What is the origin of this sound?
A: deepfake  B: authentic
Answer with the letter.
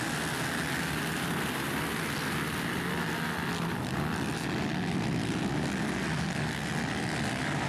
B